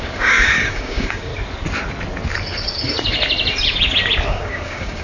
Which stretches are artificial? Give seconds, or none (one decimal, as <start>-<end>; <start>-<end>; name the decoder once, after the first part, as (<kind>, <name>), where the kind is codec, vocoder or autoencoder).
0.0-1.3 (codec, DAC); 4.3-5.0